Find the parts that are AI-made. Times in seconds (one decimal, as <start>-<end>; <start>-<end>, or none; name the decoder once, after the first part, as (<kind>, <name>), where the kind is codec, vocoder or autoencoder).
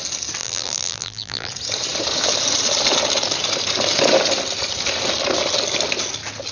0.4-1.5 (vocoder, BigVGAN v2)